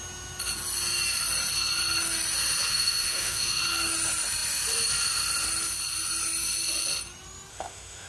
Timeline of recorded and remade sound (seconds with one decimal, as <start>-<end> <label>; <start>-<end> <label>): 0.0-2.7 recorded; 2.7-3.6 remade; 3.6-7.5 recorded; 7.5-8.1 remade